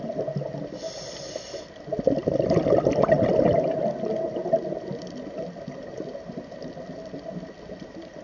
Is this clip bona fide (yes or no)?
yes